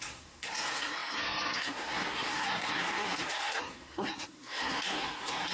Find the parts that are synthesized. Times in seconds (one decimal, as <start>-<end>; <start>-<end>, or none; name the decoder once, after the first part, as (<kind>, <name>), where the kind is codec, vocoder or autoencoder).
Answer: 0.0-5.5 (codec, SNAC)